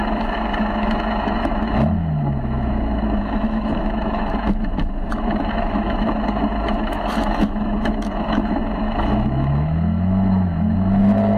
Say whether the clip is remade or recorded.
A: remade